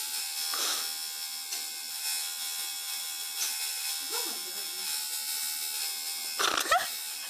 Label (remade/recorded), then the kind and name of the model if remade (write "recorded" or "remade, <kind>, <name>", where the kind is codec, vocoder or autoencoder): recorded